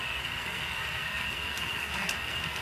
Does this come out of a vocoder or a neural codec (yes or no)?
yes